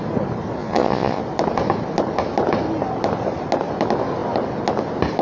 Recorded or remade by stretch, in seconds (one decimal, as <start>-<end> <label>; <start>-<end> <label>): 0.0-0.6 recorded; 0.6-1.2 remade; 1.2-5.2 recorded